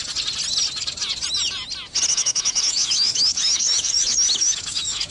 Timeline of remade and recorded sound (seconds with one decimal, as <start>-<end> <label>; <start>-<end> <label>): 0.0-2.1 recorded; 2.1-5.1 remade